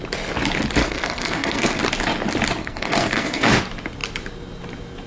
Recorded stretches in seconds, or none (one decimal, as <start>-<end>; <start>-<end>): 0.0-0.8; 1.8-2.6; 3.6-5.1

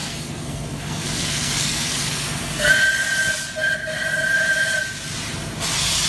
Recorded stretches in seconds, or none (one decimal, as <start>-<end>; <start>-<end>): 2.7-6.1

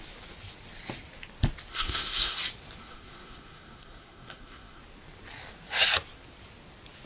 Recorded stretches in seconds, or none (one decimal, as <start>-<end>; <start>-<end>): 0.0-1.7; 2.4-2.8; 4.8-7.1

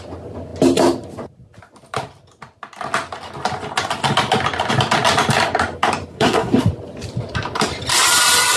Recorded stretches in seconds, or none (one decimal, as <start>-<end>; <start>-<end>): 0.0-6.1; 6.6-8.6

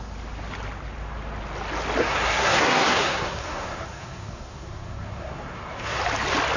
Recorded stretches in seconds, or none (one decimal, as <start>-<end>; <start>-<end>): 0.0-2.0; 6.0-6.6

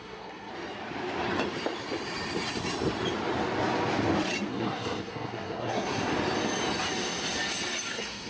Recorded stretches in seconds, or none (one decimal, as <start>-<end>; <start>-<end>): 0.5-4.5; 6.1-7.9